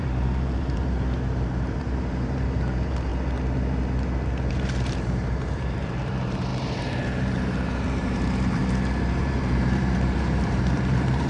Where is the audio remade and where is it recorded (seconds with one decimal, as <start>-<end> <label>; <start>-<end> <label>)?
0.0-3.1 remade; 3.1-4.5 recorded; 4.5-8.6 remade; 8.6-9.2 recorded; 9.2-11.3 remade